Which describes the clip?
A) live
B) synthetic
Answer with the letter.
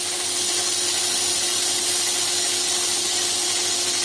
A